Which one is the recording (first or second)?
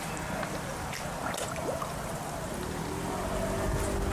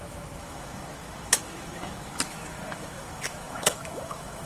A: first